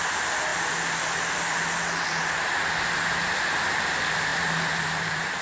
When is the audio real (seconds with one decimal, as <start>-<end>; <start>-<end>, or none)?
0.0-4.3